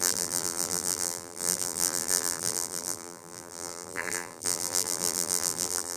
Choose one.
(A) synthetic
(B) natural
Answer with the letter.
A